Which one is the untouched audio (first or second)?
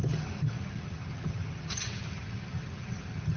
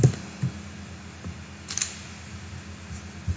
second